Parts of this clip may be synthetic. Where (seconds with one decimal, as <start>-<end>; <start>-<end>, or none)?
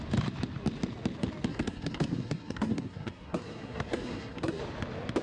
1.5-4.6